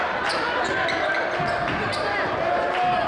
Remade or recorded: recorded